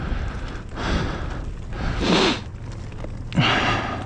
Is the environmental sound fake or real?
real